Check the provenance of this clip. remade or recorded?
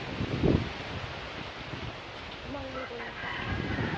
recorded